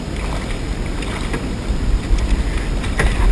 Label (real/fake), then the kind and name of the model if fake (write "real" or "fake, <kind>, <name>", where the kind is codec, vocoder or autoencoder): real